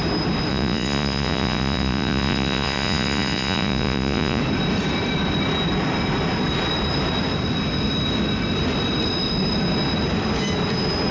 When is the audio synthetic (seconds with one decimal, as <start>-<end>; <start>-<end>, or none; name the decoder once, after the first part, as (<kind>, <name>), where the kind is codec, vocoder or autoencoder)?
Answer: 0.5-4.4 (vocoder, Vocos)